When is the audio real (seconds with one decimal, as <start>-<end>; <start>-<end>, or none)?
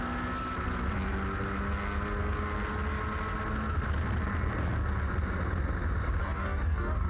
0.0-6.2